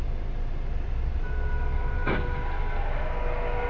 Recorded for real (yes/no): yes